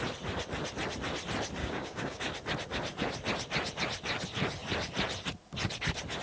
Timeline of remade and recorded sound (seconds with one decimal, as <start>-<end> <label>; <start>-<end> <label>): 0.0-1.6 recorded; 1.6-2.2 remade; 2.2-6.2 recorded